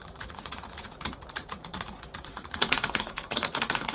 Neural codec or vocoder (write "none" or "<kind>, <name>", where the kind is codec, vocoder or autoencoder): vocoder, Vocos